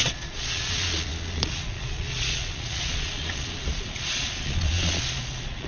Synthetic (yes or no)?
yes